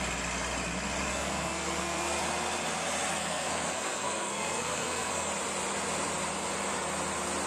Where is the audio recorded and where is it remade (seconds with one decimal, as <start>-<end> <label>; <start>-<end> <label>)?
0.0-1.1 recorded; 1.1-2.2 remade; 2.2-3.1 recorded; 3.1-5.3 remade; 5.3-7.5 recorded